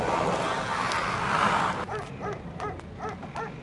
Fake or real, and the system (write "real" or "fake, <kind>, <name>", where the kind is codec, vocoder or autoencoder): real